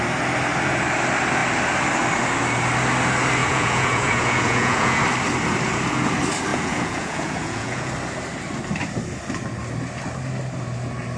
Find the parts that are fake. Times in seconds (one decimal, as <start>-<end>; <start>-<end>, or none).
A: 3.4-5.0; 6.5-7.9